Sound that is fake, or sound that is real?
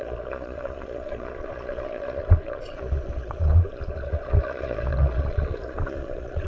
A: fake